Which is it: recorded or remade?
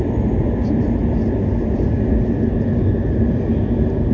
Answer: recorded